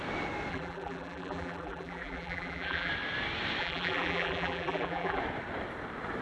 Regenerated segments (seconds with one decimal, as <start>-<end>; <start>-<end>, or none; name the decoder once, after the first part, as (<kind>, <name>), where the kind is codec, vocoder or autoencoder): 0.5-2.9 (vocoder, BigVGAN v2); 3.6-5.2